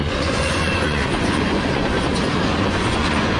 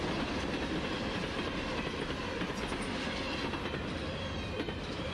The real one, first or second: second